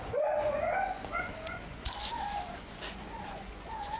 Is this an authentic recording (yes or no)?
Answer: no